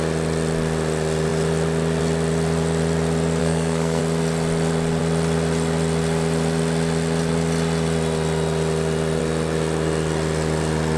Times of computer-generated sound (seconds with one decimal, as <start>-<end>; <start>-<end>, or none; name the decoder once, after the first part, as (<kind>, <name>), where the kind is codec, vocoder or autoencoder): 3.4-4.0 (codec, SNAC)